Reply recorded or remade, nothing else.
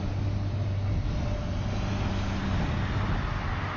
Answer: recorded